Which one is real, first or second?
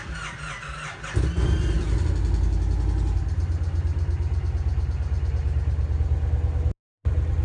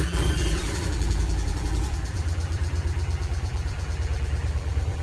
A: first